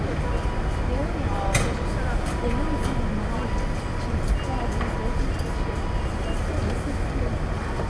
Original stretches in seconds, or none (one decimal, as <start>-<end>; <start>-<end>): 0.0-7.9